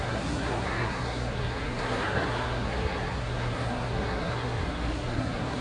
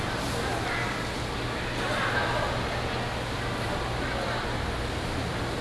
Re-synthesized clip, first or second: first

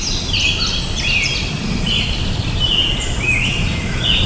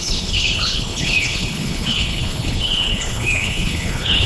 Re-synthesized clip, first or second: second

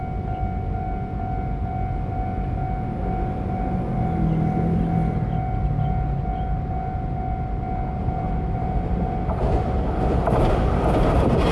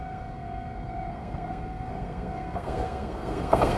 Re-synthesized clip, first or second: second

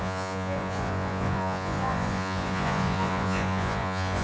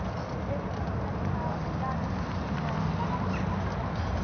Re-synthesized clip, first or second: first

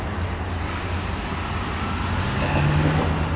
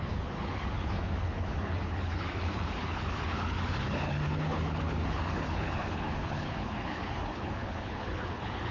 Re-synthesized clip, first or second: second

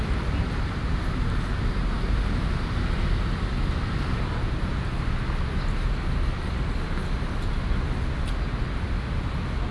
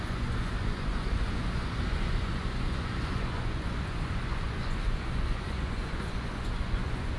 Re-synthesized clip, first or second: second